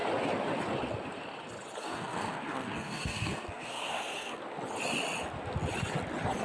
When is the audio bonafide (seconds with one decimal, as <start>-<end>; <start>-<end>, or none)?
0.0-1.8; 4.4-6.4